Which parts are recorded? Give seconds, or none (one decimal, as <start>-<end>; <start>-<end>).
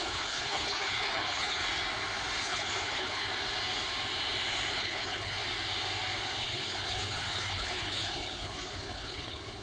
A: 1.6-2.4; 3.3-4.7; 5.4-6.4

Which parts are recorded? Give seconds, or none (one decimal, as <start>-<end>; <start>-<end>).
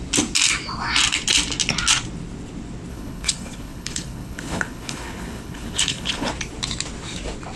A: 0.0-2.9; 6.3-7.6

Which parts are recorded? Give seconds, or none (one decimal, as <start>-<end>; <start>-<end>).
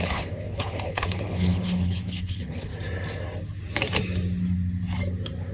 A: 2.7-5.5